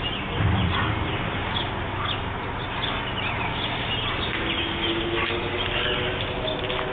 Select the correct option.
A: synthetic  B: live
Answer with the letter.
B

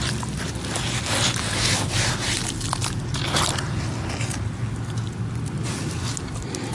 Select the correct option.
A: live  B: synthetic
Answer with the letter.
A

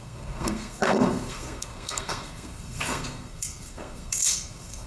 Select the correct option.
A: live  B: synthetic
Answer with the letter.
B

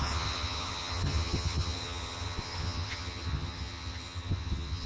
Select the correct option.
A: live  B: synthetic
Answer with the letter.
B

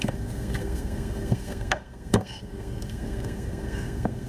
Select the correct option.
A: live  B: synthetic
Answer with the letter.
B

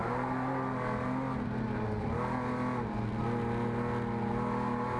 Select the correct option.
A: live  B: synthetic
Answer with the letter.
A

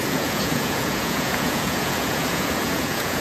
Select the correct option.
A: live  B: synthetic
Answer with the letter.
B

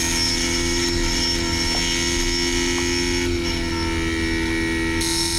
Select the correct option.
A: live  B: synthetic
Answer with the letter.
A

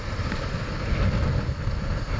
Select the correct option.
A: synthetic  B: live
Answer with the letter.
B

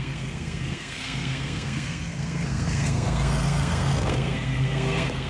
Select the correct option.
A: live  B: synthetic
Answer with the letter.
B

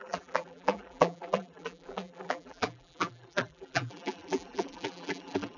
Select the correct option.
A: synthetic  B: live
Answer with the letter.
A